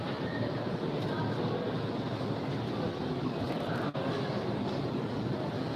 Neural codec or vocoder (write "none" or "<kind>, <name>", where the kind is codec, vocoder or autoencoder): none